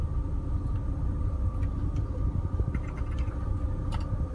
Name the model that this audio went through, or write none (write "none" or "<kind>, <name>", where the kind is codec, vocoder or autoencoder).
none